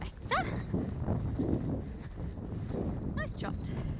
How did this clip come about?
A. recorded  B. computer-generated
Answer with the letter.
A